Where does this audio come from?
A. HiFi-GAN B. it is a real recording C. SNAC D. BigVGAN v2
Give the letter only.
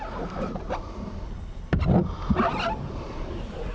B